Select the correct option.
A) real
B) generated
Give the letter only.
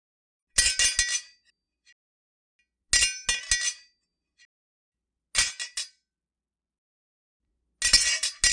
A